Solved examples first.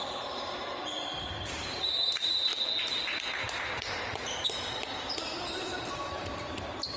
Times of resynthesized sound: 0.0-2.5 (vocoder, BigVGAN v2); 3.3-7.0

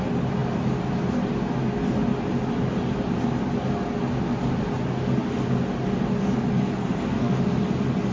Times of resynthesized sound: 6.8-7.4 (codec, SNAC)